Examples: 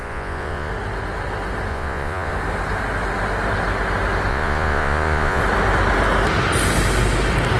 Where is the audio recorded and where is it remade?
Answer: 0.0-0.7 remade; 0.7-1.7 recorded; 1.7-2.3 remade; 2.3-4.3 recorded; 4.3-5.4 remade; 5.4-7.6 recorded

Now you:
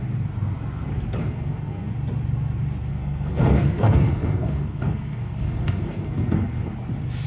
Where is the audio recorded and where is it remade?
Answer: 0.0-1.2 recorded; 1.2-1.9 remade; 1.9-2.9 recorded; 2.9-6.7 remade; 6.7-7.3 recorded

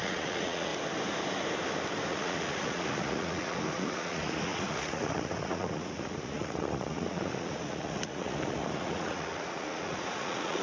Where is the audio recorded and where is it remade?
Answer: 0.0-0.7 remade; 0.7-2.1 recorded; 2.1-10.6 remade

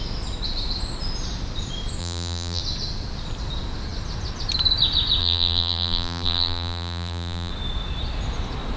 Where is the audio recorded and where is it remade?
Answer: 0.0-2.0 recorded; 2.0-2.6 remade; 2.6-5.2 recorded; 5.2-7.5 remade; 7.5-8.8 recorded